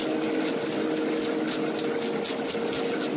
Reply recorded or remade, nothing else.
recorded